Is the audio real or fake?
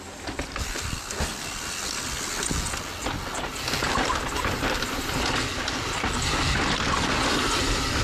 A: real